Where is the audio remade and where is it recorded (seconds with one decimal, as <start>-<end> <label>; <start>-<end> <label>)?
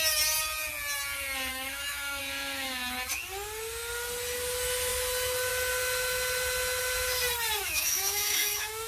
0.0-1.5 recorded; 1.5-2.2 remade; 2.2-7.6 recorded; 7.6-8.9 remade